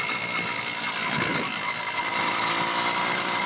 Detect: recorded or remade recorded